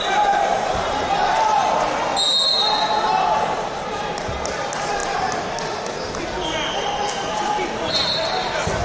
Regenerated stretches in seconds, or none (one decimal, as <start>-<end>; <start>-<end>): 0.5-1.2